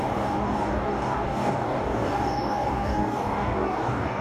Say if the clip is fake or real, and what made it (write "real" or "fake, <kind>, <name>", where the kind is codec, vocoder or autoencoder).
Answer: fake, codec, DAC